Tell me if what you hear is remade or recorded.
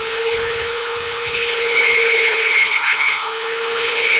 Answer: remade